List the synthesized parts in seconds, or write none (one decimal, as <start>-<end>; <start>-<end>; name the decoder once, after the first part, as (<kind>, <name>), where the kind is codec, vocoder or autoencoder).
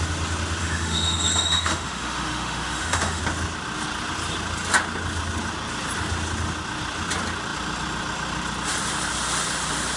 0.6-3.2 (autoencoder, DAC-VAE)